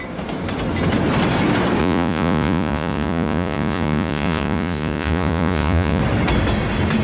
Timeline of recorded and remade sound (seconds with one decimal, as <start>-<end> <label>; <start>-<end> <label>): 0.0-1.8 recorded; 1.8-6.0 remade; 6.0-7.0 recorded